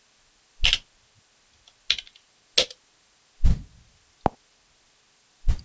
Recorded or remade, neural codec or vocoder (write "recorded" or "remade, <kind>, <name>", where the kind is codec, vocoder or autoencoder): recorded